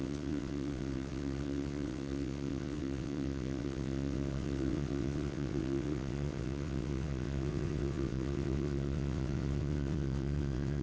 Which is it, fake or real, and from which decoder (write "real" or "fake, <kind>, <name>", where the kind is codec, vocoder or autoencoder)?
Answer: fake, vocoder, WaveNeXt